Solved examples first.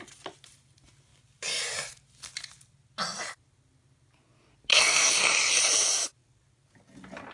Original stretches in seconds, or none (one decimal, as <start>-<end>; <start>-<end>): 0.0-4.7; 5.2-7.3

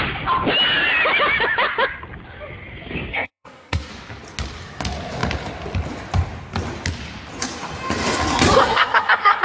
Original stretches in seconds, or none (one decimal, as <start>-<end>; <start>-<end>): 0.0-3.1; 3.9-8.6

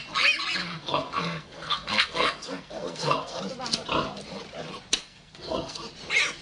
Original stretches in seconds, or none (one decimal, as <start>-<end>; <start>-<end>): 0.0-0.6; 3.4-5.0; 5.8-6.4

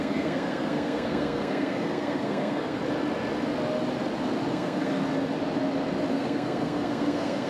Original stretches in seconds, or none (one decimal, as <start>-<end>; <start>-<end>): 2.8-4.5; 5.0-6.1

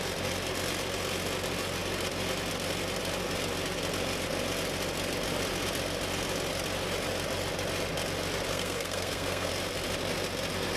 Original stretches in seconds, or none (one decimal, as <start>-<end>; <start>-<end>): 0.0-8.5; 9.5-10.8